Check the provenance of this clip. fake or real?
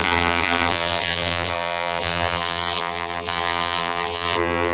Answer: fake